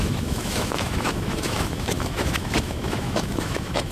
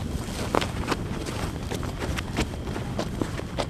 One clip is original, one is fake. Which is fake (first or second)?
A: first